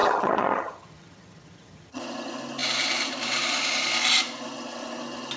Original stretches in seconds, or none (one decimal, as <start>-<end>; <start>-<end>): 2.0-5.4